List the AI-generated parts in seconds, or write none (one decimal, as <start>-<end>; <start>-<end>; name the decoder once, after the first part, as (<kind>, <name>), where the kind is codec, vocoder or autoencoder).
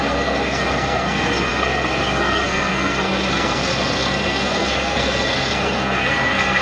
0.0-6.6 (codec, SNAC)